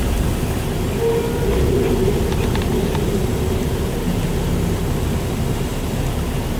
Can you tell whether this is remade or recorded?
recorded